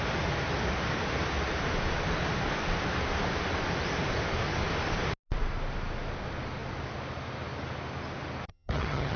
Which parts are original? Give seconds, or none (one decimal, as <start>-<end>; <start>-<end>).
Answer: 0.0-8.5